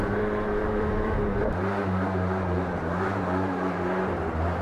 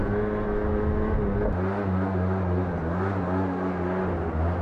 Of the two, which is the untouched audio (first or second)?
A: second